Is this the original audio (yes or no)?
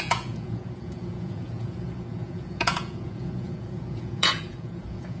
no